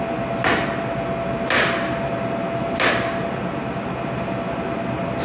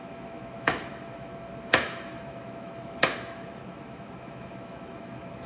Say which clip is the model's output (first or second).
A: second